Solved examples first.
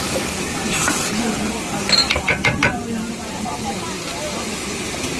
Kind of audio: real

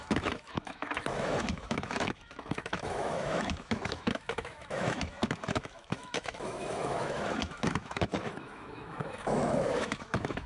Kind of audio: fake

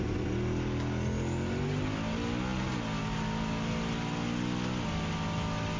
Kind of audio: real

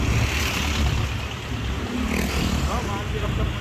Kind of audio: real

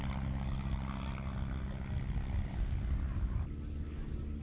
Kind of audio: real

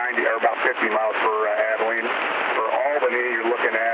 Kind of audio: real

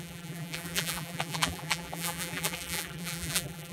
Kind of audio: fake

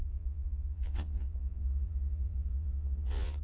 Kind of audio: fake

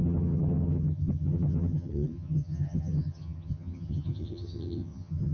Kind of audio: fake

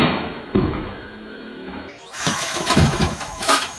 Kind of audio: fake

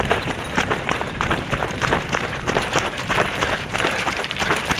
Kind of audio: fake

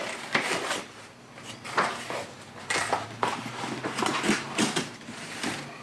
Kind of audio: real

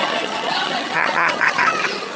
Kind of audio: fake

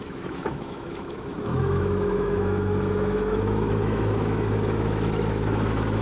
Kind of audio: fake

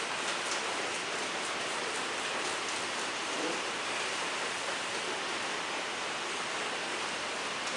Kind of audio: real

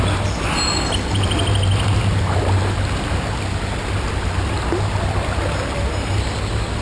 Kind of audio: real